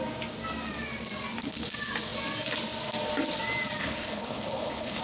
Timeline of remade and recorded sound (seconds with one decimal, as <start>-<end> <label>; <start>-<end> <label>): 0.0-3.8 recorded; 3.8-5.0 remade

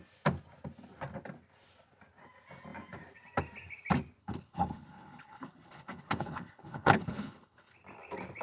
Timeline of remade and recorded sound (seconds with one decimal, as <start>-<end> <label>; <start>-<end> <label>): 0.0-4.2 recorded; 4.2-7.7 remade; 7.7-8.4 recorded

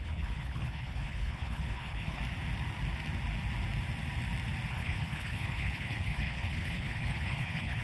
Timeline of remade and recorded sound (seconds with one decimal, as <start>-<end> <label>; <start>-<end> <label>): 0.0-2.2 remade; 2.2-4.7 recorded; 4.7-7.8 remade

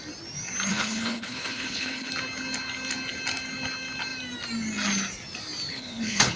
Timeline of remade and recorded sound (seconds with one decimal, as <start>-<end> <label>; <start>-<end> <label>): 0.0-0.7 recorded; 0.7-2.1 remade; 2.1-5.7 recorded; 5.7-6.4 remade

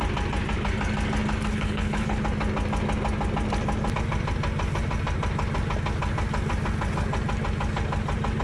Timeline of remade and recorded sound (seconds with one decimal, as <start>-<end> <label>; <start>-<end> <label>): 0.0-1.5 recorded; 1.5-2.2 remade; 2.2-8.4 recorded

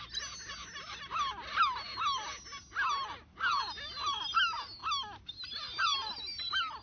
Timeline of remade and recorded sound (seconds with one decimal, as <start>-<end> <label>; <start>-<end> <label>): 0.0-6.8 recorded

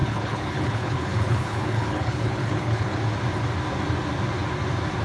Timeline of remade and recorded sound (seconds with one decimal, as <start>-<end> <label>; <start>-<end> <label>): 0.0-3.0 remade; 3.0-5.0 recorded